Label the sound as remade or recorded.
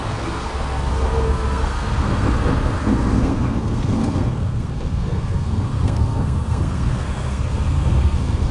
remade